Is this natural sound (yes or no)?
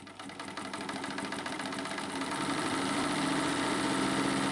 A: yes